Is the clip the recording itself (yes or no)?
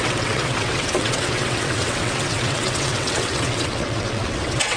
no